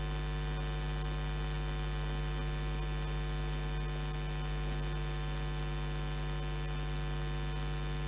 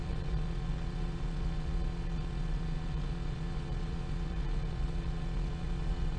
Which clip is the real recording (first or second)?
first